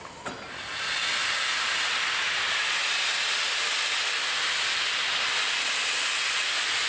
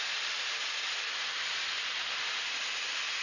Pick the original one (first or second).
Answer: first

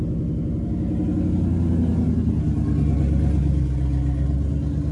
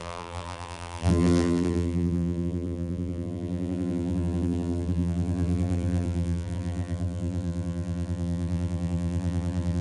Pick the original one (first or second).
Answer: first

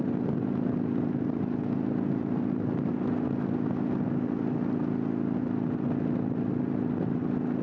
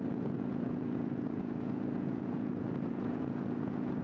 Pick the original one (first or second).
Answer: first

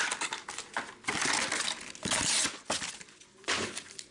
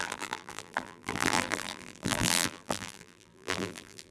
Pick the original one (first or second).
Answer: first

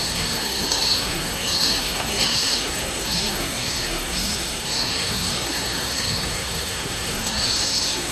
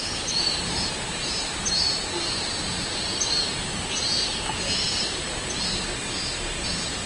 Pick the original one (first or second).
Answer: second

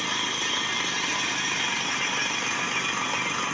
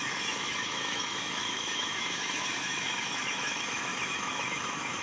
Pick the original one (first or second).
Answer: first